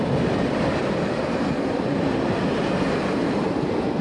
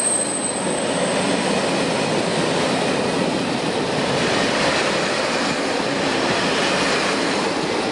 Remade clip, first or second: first